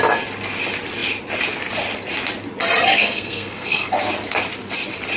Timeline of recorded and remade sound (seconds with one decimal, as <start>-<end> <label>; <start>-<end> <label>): 0.0-2.9 recorded; 2.9-3.9 remade; 3.9-5.2 recorded